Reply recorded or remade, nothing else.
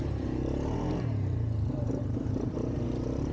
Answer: remade